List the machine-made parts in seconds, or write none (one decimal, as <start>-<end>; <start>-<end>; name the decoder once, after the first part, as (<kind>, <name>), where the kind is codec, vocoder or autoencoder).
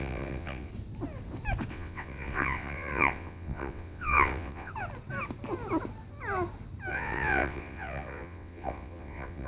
0.0-0.7 (vocoder, WaveNeXt); 1.7-4.7; 6.9-9.5